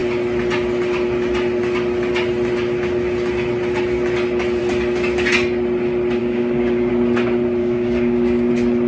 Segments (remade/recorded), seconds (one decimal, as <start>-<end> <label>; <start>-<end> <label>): 0.0-6.2 recorded; 6.2-6.9 remade; 6.9-7.6 recorded; 7.6-8.5 remade; 8.5-8.9 recorded